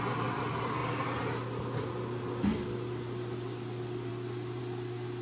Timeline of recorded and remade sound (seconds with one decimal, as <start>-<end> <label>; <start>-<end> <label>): 0.0-5.2 recorded